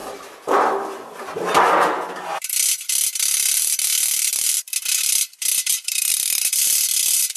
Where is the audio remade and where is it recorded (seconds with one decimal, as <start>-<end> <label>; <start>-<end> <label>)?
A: 0.0-7.4 recorded